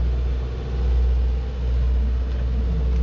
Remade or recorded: recorded